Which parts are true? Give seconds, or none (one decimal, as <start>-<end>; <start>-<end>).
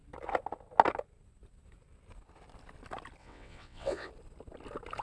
0.0-3.2; 4.1-5.0